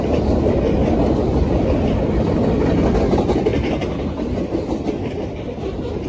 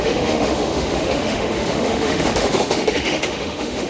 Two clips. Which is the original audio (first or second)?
first